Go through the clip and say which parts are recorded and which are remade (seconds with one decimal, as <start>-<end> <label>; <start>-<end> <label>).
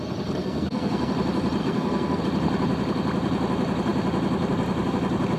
0.0-0.4 recorded; 0.4-1.1 remade; 1.1-1.6 recorded; 1.6-2.2 remade; 2.2-5.4 recorded